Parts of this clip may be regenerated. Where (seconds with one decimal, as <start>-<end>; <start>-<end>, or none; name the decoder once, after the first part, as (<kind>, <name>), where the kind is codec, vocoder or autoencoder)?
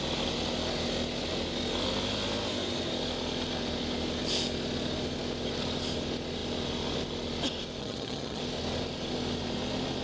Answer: 7.8-8.4 (vocoder, HiFi-GAN)